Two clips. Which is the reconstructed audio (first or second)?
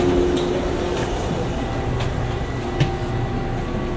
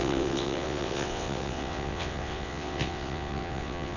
second